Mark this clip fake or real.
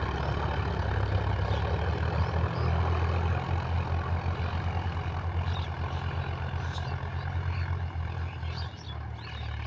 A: real